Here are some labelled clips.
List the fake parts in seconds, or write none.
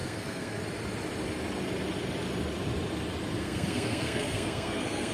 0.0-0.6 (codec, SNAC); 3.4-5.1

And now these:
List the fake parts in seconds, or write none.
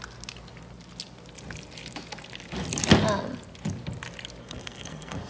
4.4-5.3 (codec, SNAC)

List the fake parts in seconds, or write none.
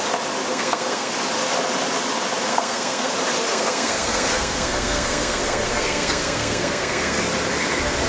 0.5-1.1 (codec, SNAC); 2.5-3.1; 3.5-7.2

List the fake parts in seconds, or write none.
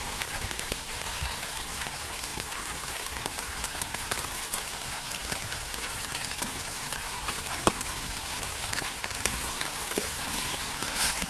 0.0-11.3 (codec, SNAC)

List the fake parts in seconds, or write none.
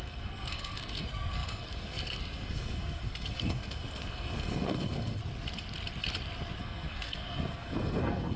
0.0-5.2 (codec, SNAC); 6.6-8.4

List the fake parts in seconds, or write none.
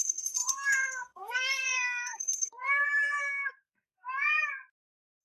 0.0-4.3 (codec, SNAC)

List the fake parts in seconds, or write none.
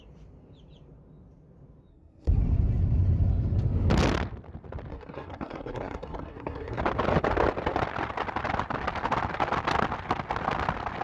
1.9-2.4 (codec, SNAC); 4.9-6.8